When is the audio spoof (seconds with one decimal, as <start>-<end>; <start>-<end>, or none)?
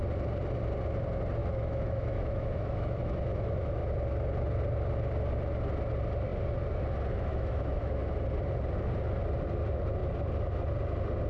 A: 1.4-3.9; 7.3-8.0